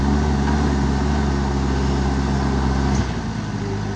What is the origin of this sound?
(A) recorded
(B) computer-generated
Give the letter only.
A